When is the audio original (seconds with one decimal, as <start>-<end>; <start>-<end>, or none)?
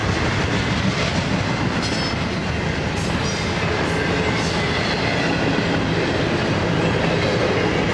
0.0-7.9